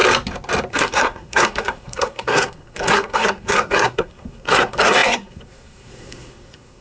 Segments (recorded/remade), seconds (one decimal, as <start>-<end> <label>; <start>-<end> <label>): 0.0-0.7 recorded; 0.7-6.8 remade